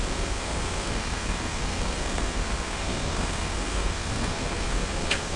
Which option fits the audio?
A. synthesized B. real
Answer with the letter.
A